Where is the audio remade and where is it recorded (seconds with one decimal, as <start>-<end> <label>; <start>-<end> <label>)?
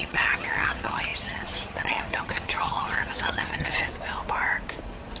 0.0-3.9 remade; 3.9-5.2 recorded